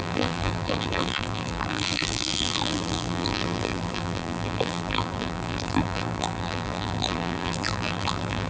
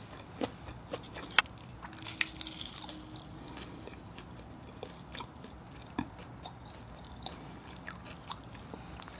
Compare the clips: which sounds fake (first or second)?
first